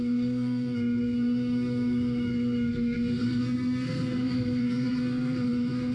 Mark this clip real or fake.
fake